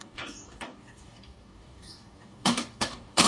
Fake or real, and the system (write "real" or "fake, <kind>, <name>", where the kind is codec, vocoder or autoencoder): fake, codec, DAC